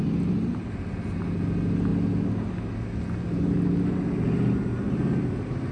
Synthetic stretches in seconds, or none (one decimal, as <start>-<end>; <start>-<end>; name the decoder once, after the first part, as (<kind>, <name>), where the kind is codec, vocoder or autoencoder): none